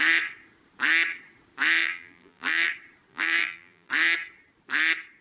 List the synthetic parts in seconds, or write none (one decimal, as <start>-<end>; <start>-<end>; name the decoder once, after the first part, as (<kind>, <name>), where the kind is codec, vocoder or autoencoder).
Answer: 1.8-2.7 (vocoder, BigVGAN v2); 3.1-3.9